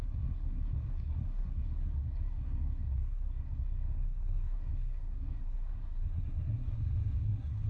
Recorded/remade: remade